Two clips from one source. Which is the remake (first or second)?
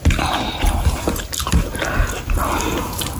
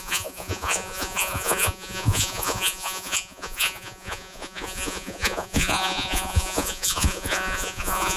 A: second